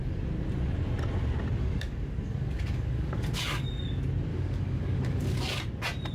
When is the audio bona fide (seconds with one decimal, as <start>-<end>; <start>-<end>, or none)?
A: 0.0-1.6; 3.7-4.3; 5.6-6.1